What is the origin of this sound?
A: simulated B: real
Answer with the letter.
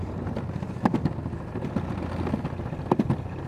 B